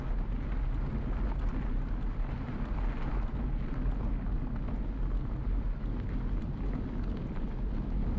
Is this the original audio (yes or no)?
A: yes